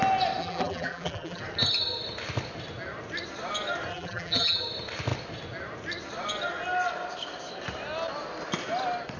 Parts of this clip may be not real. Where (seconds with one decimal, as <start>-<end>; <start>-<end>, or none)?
0.4-1.4; 3.9-4.6

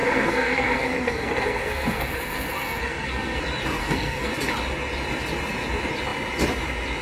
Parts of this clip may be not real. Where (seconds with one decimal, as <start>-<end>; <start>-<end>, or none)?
0.0-3.4; 3.8-4.3

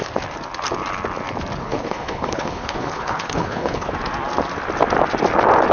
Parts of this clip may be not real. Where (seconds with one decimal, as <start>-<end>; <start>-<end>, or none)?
1.6-3.9

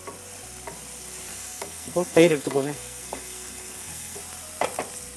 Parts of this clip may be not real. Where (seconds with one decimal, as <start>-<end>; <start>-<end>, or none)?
1.3-4.2

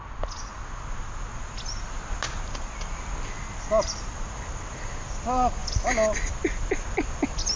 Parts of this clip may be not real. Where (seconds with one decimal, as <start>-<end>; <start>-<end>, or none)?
none

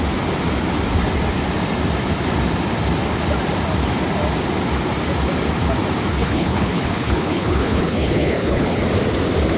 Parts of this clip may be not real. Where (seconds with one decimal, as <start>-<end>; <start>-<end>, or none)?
6.1-8.8

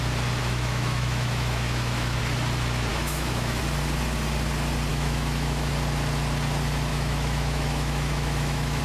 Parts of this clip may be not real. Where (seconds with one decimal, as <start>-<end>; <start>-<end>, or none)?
0.4-2.2; 2.9-3.6; 4.9-5.7; 6.9-8.8

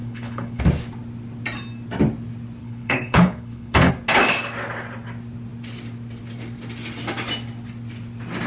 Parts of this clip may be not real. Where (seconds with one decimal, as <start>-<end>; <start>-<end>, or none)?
0.0-0.6; 2.6-3.9